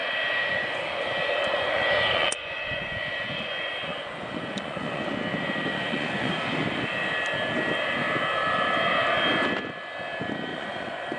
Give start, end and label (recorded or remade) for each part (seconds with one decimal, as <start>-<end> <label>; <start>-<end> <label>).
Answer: 0.0-5.0 remade; 5.0-5.7 recorded; 5.7-6.3 remade; 6.3-10.5 recorded; 10.5-11.2 remade